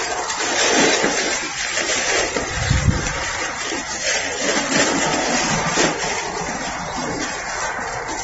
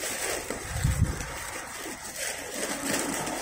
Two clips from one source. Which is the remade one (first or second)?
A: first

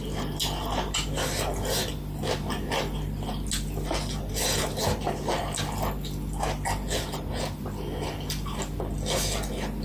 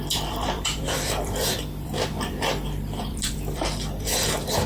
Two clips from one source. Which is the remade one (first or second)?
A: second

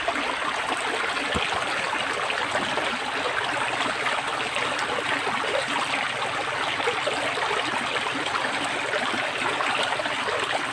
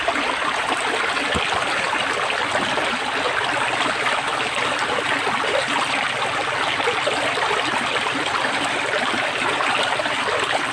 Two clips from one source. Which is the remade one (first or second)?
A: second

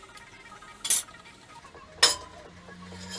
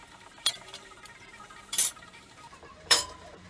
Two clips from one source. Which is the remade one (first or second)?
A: second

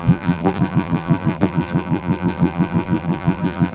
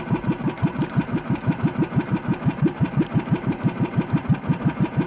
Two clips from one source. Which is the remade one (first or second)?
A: first